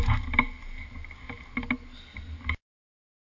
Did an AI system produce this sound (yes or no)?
no